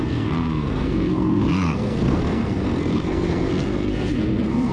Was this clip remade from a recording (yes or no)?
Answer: yes